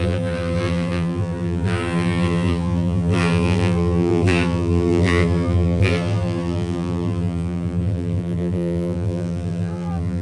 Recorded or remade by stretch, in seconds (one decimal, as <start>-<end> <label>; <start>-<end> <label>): 0.0-10.2 remade